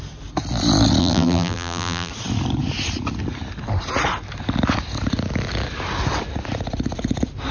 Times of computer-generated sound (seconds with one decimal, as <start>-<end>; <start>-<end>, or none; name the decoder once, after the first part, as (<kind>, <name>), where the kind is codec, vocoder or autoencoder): 1.0-2.1 (vocoder, BigVGAN v2)